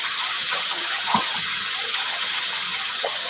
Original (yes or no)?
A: no